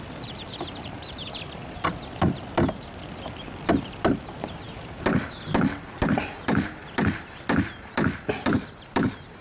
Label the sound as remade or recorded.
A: remade